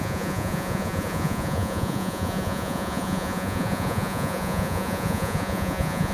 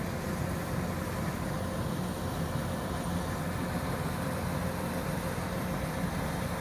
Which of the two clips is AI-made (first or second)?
first